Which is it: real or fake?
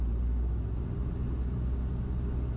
real